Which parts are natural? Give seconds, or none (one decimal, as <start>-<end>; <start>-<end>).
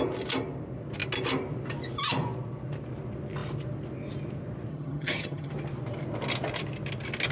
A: 0.0-4.7; 5.5-7.3